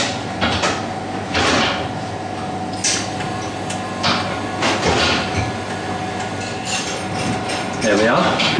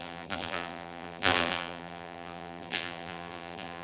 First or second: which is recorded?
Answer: first